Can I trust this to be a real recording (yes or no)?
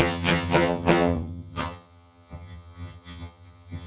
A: no